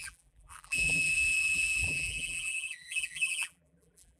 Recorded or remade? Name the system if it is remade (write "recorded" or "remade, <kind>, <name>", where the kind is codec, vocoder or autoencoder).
remade, vocoder, BigVGAN v2